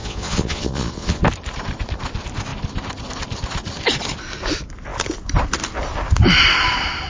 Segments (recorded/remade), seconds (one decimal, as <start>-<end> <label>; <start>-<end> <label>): 0.0-1.2 remade; 1.2-7.1 recorded